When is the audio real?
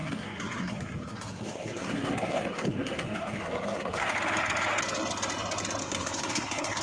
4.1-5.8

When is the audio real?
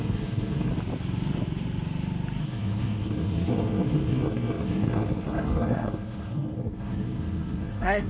0.7-2.4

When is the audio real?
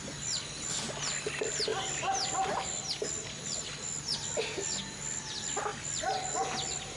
0.0-7.0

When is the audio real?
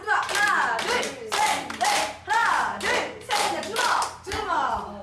0.0-5.0